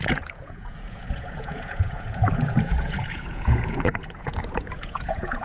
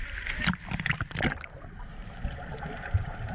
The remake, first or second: first